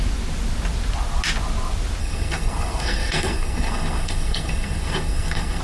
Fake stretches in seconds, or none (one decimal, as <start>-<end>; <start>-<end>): 2.0-5.6